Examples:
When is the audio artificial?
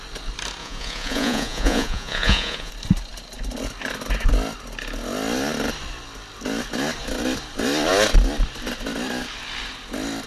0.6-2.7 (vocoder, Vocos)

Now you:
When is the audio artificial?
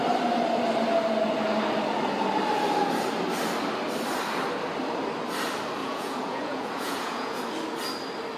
5.8-7.4 (vocoder, Vocos)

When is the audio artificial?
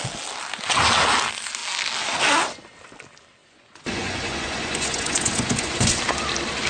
3.4-5.9 (vocoder, Vocos)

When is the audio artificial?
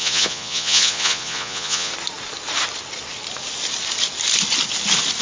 0.0-1.9 (vocoder, Vocos)